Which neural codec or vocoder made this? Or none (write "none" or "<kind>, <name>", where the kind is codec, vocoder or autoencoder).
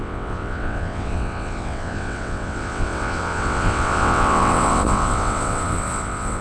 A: vocoder, WaveNeXt